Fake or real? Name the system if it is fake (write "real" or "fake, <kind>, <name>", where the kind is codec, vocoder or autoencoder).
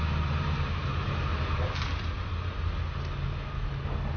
real